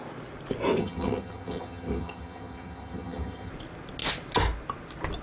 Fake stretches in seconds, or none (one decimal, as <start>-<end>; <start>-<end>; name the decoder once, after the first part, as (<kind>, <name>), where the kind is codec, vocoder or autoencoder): 0.8-3.5 (vocoder, HiFi-GAN)